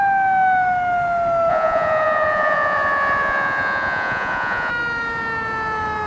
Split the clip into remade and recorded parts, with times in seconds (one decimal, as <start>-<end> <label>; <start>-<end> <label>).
0.0-1.5 recorded; 1.5-4.7 remade; 4.7-6.1 recorded